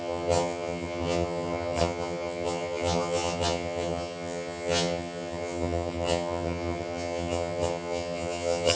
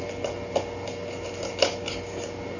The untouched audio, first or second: second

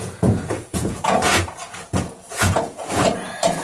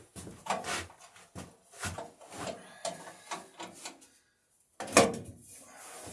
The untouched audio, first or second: second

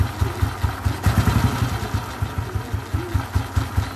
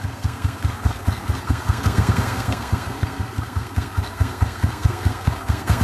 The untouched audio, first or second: first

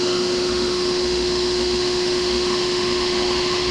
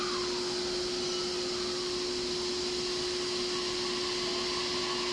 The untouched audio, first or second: second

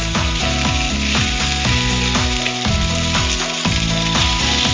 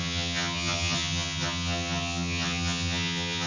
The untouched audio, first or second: first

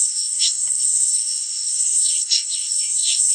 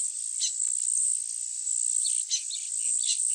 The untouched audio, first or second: second